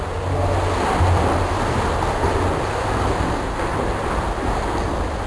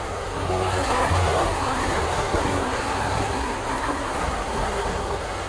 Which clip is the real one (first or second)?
first